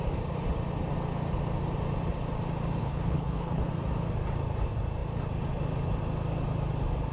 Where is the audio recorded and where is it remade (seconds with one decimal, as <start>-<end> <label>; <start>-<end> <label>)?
0.0-2.8 recorded; 2.8-3.7 remade; 3.7-7.1 recorded